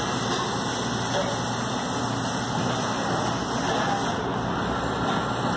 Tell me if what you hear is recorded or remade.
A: recorded